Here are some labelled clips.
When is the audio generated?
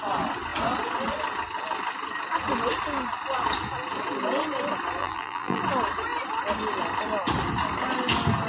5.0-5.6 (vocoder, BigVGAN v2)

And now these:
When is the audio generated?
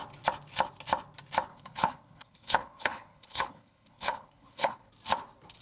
1.5-4.9 (codec, HILCodec)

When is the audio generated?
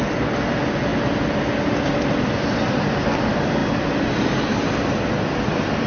none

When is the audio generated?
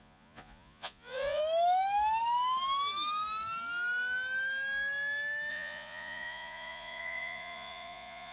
0.0-1.4 (vocoder, Vocos); 5.5-8.3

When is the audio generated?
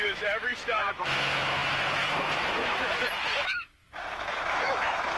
0.0-5.2 (autoencoder, DAC-VAE)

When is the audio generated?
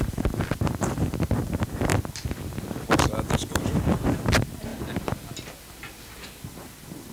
none